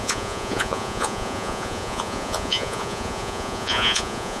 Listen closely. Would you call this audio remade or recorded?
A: remade